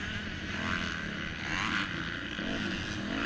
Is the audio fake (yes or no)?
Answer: no